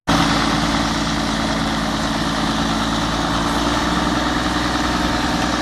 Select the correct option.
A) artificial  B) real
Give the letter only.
B